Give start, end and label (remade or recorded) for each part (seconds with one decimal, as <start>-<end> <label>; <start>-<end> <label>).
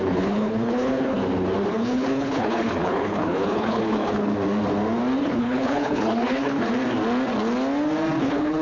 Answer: 0.0-1.2 remade; 1.2-1.7 recorded; 1.7-4.3 remade; 4.3-5.2 recorded; 5.2-6.7 remade; 6.7-8.2 recorded; 8.2-8.6 remade